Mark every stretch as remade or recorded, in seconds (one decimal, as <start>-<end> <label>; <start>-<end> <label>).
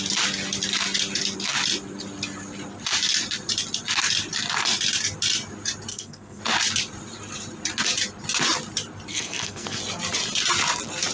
0.0-5.9 recorded; 5.9-6.4 remade; 6.4-9.1 recorded; 9.1-9.8 remade; 9.8-11.1 recorded